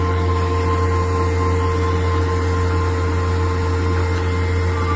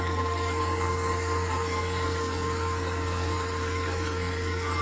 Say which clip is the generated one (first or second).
second